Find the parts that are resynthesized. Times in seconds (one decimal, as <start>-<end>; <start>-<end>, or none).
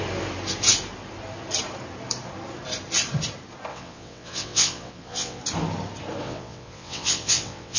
3.7-5.4; 6.2-7.8